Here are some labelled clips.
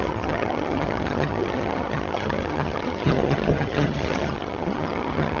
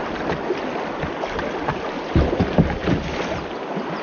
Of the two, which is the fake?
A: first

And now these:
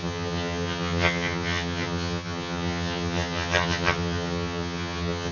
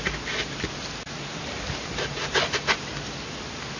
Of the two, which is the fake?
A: first